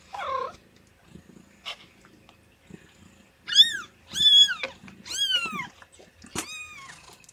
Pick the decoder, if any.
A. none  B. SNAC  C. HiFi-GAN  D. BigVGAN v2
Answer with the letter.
A